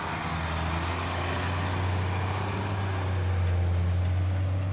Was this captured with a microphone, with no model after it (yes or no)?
yes